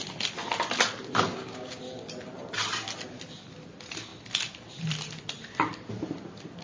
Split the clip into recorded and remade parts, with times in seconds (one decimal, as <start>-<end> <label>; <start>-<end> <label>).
0.0-1.3 recorded; 1.3-1.8 remade; 1.8-6.6 recorded